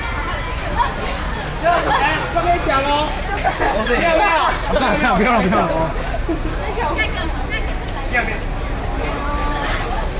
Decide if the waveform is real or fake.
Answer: real